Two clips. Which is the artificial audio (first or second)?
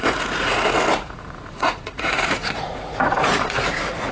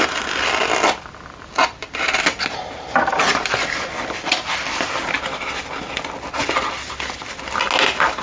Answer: first